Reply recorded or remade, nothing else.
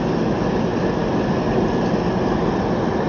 recorded